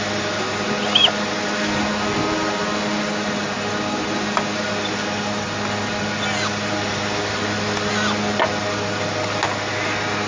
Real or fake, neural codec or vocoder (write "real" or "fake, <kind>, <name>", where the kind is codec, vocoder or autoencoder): real